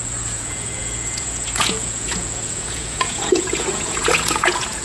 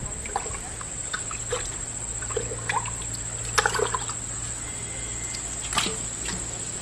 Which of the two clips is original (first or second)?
second